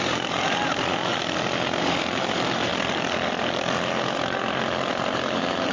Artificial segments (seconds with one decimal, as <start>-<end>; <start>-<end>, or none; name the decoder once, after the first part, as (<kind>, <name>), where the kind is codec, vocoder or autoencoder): 0.0-1.1 (vocoder, BigVGAN v2); 1.8-2.7; 4.9-5.7